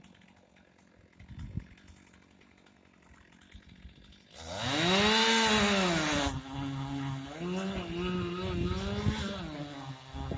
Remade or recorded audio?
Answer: recorded